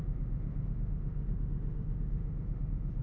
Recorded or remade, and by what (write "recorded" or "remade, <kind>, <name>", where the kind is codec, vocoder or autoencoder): remade, autoencoder, DAC-VAE